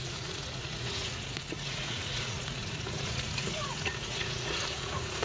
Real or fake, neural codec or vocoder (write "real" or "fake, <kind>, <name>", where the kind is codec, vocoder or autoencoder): fake, vocoder, Vocos